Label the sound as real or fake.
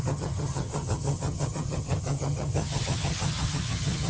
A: fake